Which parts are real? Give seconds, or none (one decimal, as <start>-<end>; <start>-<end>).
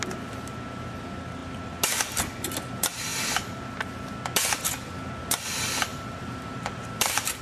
0.0-5.9